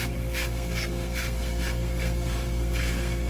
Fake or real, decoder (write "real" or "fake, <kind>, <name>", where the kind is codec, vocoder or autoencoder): fake, codec, SNAC